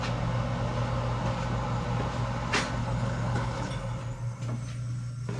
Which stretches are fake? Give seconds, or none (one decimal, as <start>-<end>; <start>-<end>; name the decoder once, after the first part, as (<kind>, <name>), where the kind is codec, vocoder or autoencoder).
2.8-3.7 (codec, HILCodec)